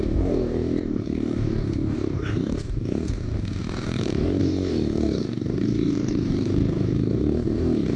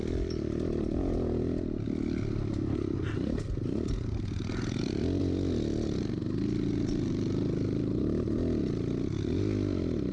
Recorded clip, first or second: second